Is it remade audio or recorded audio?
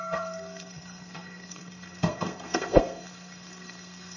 remade